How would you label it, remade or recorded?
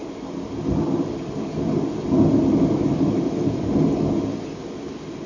recorded